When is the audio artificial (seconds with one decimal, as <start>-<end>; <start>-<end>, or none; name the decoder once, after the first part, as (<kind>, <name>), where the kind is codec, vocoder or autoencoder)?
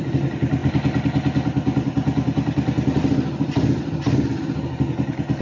none